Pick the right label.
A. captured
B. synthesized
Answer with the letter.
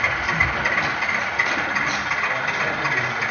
A